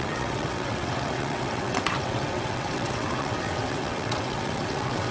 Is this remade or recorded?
remade